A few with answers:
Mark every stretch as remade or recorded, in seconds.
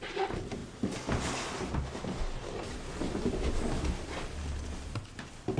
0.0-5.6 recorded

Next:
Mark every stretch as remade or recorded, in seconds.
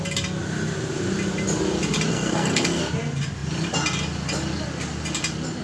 0.0-2.1 recorded; 2.1-2.8 remade; 2.8-5.6 recorded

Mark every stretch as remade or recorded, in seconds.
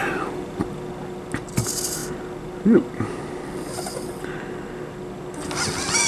0.0-6.1 recorded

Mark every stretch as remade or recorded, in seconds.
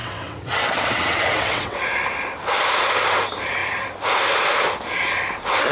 0.0-1.8 remade; 1.8-5.7 recorded